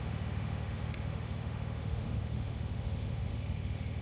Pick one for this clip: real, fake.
fake